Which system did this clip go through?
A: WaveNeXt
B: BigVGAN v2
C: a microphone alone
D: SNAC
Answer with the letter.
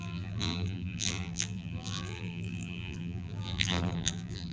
B